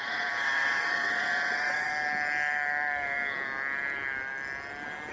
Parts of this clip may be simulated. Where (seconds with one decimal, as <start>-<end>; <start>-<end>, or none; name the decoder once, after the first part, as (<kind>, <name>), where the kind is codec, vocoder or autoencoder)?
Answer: 0.0-1.9 (vocoder, WaveNeXt)